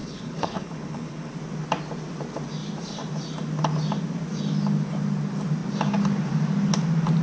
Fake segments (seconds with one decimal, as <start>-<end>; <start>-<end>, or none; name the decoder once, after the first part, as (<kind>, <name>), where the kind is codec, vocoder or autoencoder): 0.0-1.3 (codec, HILCodec)